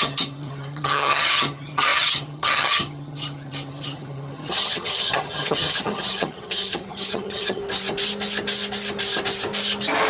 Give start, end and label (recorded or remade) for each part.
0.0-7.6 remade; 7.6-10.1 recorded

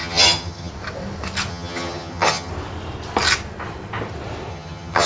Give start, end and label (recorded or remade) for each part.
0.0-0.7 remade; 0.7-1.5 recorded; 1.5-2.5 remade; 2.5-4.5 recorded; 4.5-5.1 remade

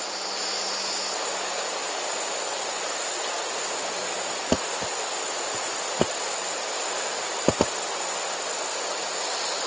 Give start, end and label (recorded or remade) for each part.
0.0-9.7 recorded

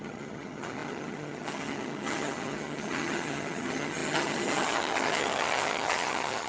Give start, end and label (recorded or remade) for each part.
0.0-6.5 remade

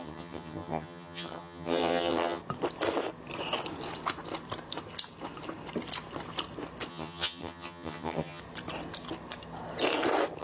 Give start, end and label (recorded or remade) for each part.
0.0-2.4 remade; 2.4-6.9 recorded; 6.9-8.4 remade; 8.4-10.4 recorded

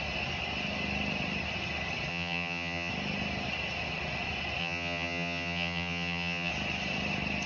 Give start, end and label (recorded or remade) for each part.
0.0-2.1 recorded; 2.1-2.9 remade; 2.9-4.6 recorded; 4.6-6.5 remade; 6.5-7.5 recorded